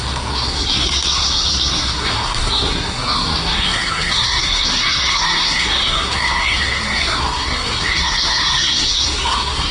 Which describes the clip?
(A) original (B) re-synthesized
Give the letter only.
B